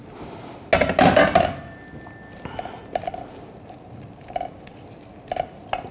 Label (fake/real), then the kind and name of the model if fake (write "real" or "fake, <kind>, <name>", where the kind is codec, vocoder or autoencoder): real